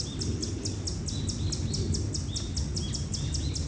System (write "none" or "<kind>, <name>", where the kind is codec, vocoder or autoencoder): none